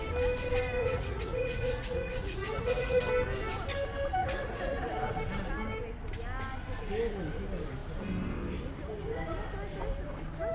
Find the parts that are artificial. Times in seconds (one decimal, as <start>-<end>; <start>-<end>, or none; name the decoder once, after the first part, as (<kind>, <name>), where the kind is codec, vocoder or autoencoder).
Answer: 0.8-3.0 (vocoder, Vocos); 4.2-4.8